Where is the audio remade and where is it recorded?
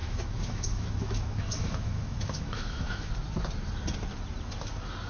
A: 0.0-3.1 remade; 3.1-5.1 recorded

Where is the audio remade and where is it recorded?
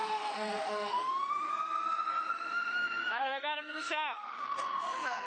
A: 0.0-1.5 remade; 1.5-2.3 recorded; 2.3-5.3 remade